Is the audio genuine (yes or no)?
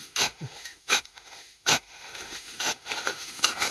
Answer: no